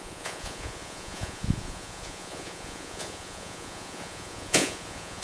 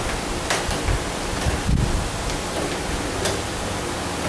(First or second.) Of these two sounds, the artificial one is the first